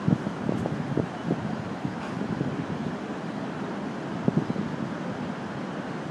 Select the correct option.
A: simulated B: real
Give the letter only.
B